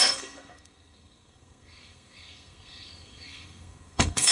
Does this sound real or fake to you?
fake